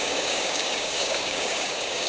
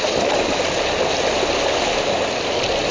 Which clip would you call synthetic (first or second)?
first